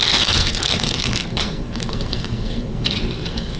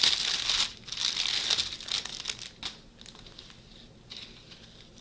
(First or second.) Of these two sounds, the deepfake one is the first